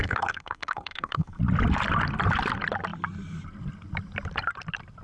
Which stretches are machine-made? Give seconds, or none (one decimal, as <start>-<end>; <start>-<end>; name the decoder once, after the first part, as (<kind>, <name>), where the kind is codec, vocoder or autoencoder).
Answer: 0.0-1.4 (codec, SNAC)